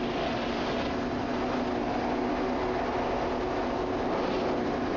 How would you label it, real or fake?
real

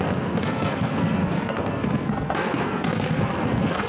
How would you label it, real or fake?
fake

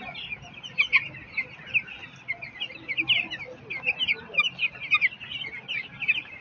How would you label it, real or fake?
real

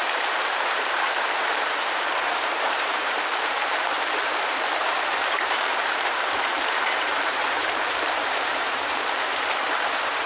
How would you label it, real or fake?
fake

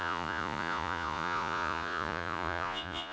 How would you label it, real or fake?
fake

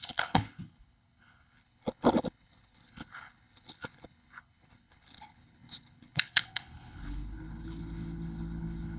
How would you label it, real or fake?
fake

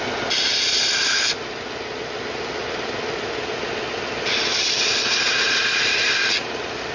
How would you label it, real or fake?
real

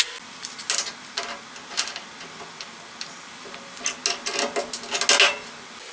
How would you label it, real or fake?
real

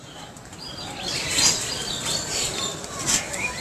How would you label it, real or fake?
fake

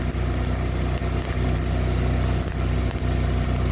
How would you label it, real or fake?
real